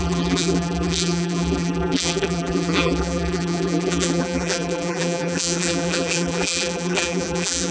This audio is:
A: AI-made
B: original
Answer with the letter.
A